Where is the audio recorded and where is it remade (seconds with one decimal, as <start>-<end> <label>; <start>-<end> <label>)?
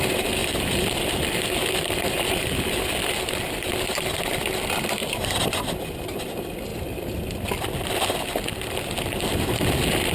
0.0-0.4 recorded; 0.4-5.1 remade; 5.1-6.7 recorded; 6.7-8.0 remade; 8.0-10.1 recorded